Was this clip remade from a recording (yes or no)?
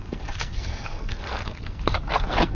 yes